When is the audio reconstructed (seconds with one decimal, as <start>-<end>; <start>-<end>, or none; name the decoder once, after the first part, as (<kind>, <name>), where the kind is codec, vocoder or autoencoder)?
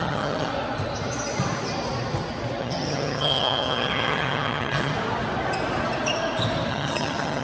0.0-0.5 (vocoder, HiFi-GAN); 2.6-4.9; 6.7-7.4